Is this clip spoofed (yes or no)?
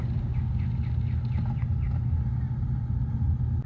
no